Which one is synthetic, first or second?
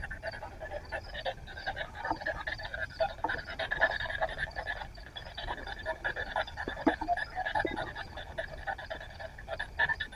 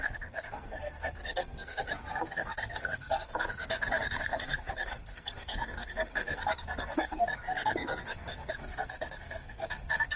second